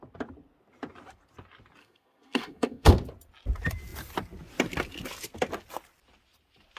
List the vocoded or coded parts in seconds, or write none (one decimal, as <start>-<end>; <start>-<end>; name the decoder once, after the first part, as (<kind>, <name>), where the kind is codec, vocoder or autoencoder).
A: 1.8-2.9 (codec, SNAC)